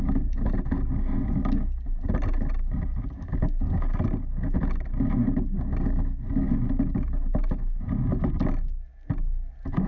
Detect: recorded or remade recorded